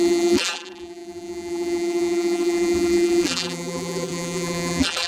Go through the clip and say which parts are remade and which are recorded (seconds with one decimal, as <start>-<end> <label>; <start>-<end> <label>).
0.0-5.1 remade